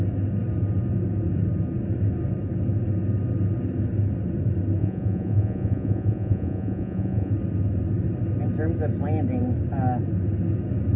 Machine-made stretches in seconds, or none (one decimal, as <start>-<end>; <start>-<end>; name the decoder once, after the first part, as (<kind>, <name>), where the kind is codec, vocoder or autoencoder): 4.8-7.3 (vocoder, Vocos)